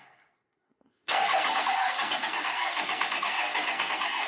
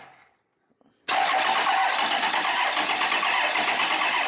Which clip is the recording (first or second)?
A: second